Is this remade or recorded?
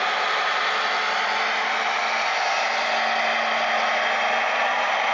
recorded